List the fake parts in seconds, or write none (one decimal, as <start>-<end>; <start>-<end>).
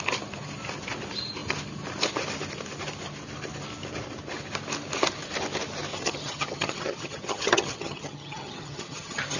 5.9-9.4